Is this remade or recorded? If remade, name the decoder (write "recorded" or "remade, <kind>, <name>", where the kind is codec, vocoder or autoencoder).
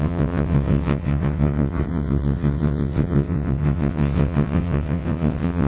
remade, vocoder, WaveNeXt